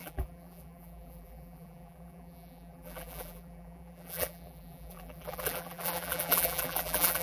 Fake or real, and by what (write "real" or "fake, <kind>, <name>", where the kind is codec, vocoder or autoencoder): fake, vocoder, BigVGAN v2